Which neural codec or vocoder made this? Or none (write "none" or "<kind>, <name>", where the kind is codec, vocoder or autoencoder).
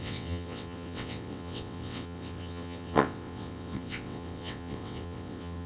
vocoder, WaveNeXt